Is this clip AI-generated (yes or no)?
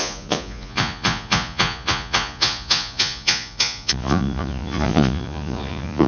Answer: yes